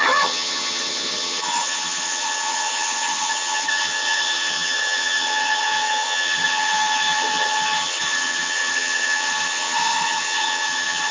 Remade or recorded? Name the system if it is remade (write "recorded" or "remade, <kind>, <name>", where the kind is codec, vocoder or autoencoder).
remade, vocoder, HiFi-GAN